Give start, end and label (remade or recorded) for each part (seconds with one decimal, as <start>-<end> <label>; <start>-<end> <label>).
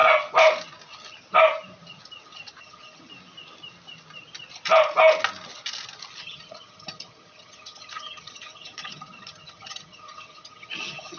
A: 0.0-2.6 recorded; 2.6-3.1 remade; 3.1-6.2 recorded; 6.2-11.2 remade